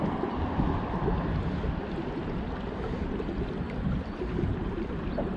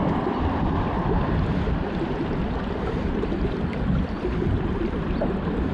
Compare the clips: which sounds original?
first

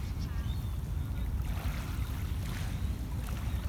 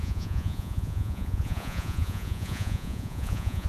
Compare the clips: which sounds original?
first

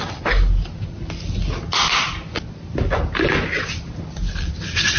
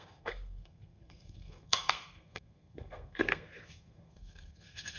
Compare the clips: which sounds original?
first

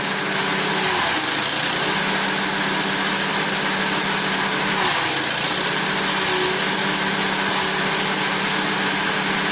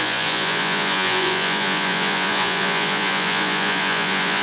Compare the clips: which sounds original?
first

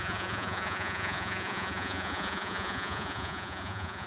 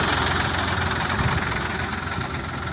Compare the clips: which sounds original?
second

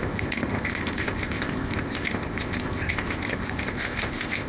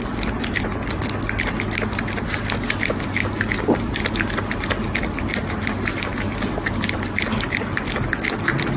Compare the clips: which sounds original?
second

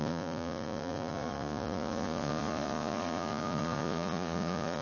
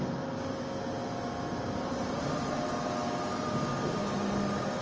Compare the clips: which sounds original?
second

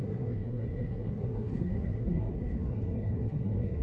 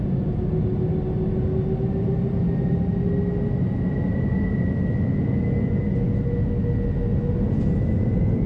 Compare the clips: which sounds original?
second